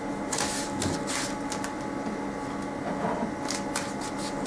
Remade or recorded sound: recorded